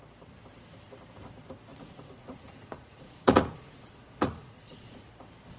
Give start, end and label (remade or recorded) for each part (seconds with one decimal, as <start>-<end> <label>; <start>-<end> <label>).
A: 0.0-1.7 recorded; 1.7-5.1 remade; 5.1-5.6 recorded